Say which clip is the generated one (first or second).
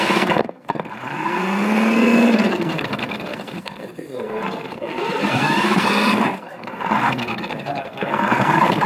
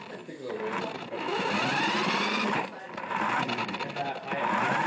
first